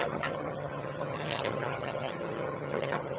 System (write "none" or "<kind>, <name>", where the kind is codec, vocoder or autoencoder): vocoder, HiFi-GAN